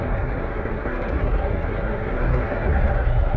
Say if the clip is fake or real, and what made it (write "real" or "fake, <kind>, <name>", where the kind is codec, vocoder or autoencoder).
fake, codec, SNAC